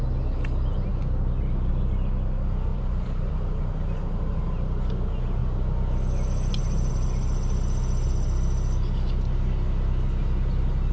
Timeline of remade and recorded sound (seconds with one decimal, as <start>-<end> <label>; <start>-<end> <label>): 0.0-0.9 recorded; 0.9-1.7 remade; 1.7-2.7 recorded; 2.7-3.3 remade; 3.3-10.9 recorded